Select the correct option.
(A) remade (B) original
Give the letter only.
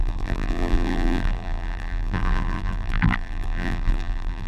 A